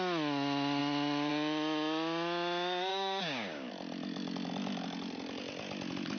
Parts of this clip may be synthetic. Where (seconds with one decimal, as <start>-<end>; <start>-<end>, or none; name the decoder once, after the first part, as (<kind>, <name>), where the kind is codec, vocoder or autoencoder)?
2.9-3.7 (codec, DAC)